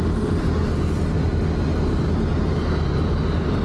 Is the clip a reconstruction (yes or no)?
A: no